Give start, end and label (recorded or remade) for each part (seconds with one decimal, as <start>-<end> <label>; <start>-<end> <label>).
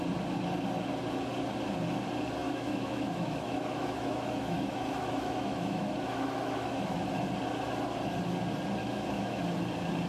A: 0.0-2.4 recorded; 2.4-7.1 remade; 7.1-8.8 recorded; 8.8-9.4 remade; 9.4-10.1 recorded